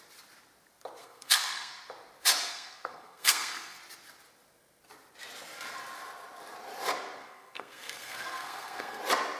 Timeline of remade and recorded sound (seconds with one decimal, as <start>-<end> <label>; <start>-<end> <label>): 0.0-1.0 recorded; 1.0-1.7 remade; 1.7-2.5 recorded; 2.5-3.8 remade; 3.8-7.2 recorded; 7.2-9.0 remade; 9.0-9.4 recorded